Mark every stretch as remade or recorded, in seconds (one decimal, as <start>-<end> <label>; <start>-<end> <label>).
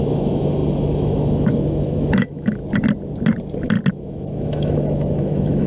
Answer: 0.0-2.6 remade; 2.6-3.9 recorded; 3.9-5.7 remade